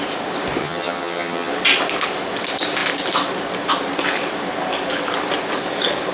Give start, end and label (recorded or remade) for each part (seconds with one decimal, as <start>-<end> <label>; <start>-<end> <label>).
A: 0.0-0.6 recorded; 0.6-1.5 remade; 1.5-6.1 recorded